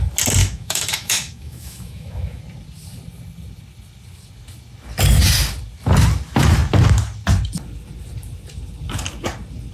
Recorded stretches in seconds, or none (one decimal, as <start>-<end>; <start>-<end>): 0.0-0.4; 2.4-9.7